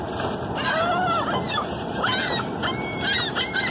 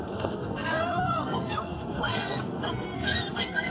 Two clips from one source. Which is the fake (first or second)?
second